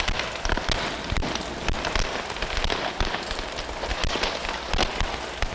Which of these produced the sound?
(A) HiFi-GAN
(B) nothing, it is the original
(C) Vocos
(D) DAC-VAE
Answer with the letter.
B